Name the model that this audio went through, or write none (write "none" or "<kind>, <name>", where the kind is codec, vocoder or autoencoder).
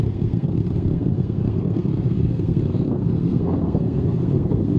codec, SNAC